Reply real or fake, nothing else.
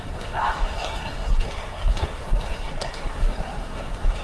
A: fake